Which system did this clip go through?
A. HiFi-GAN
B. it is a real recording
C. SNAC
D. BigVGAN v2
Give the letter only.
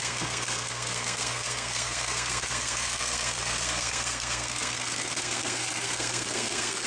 C